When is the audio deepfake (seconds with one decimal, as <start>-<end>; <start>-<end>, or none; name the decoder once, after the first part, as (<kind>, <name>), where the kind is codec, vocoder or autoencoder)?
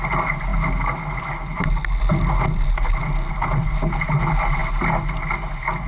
none